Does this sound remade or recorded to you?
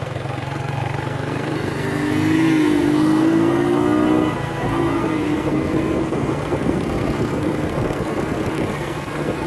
remade